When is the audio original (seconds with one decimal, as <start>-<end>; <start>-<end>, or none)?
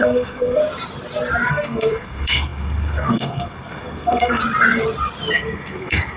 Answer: 0.6-1.5; 4.4-5.4